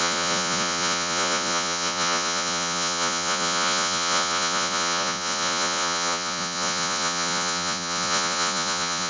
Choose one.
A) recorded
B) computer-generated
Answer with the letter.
B